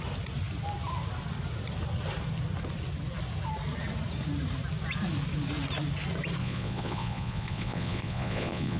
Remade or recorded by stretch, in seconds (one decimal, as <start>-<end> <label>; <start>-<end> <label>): 0.0-6.4 recorded; 6.4-8.8 remade